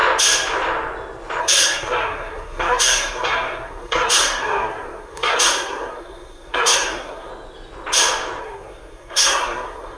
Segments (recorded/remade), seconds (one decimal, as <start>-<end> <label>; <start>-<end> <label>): 0.0-1.4 recorded; 1.4-7.3 remade; 7.3-8.4 recorded; 8.4-10.0 remade

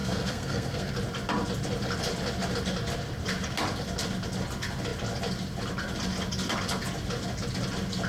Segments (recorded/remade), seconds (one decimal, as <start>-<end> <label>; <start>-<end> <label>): 0.0-0.9 remade; 0.9-8.1 recorded

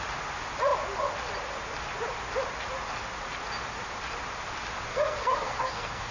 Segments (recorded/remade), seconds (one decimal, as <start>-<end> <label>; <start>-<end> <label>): 0.0-4.9 recorded; 4.9-6.1 remade

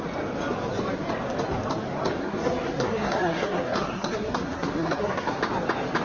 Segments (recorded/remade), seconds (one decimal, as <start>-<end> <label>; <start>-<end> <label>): 0.0-2.2 recorded; 2.2-5.4 remade; 5.4-6.0 recorded

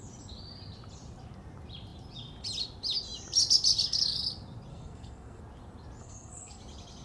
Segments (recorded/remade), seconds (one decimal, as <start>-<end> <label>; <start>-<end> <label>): 0.0-4.7 recorded; 4.7-5.4 remade; 5.4-6.0 recorded; 6.0-6.6 remade; 6.6-7.0 recorded

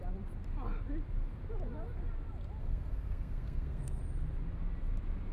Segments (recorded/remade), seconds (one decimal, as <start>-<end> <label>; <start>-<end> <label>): 0.0-2.6 recorded; 2.6-4.0 remade; 4.0-5.3 recorded

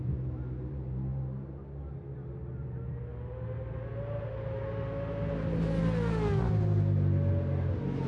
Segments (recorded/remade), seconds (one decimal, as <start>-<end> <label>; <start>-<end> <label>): 0.0-8.1 recorded